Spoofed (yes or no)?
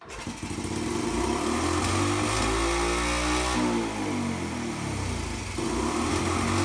no